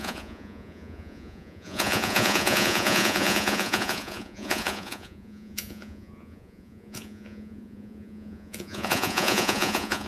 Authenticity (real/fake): fake